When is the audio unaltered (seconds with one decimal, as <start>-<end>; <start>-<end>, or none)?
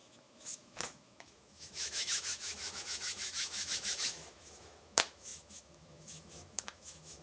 none